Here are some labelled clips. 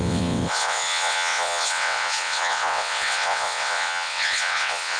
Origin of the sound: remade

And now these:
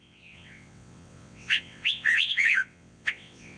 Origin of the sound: remade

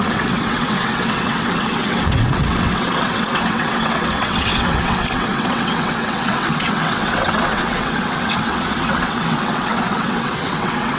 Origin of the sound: remade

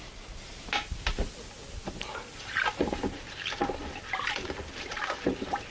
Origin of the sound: recorded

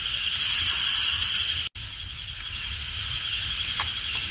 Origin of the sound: recorded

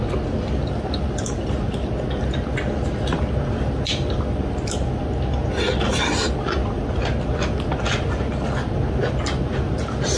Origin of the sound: recorded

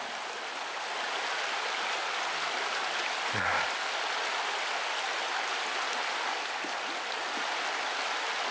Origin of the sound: recorded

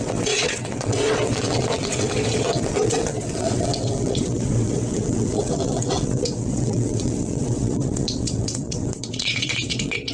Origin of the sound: remade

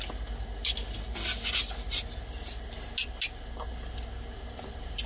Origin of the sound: recorded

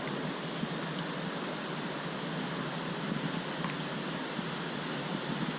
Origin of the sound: recorded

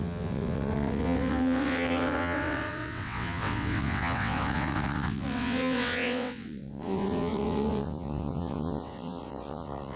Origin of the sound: remade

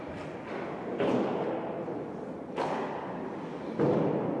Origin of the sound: recorded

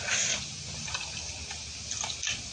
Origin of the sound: recorded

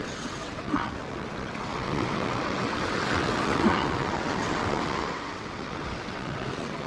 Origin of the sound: remade